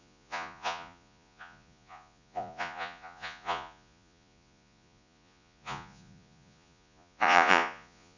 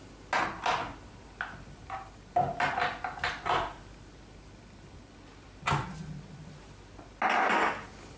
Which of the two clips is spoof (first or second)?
first